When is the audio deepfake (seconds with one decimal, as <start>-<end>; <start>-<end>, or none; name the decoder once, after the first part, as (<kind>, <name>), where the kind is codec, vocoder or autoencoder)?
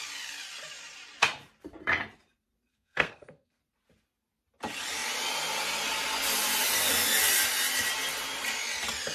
2.7-3.6 (codec, SNAC)